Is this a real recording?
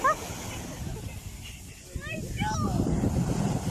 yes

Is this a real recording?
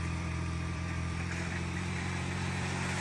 no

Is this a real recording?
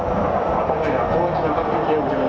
yes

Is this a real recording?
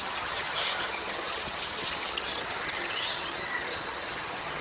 no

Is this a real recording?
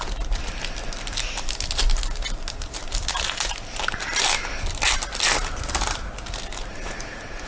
yes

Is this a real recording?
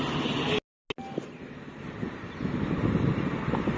yes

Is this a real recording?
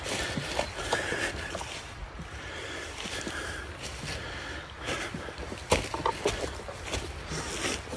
yes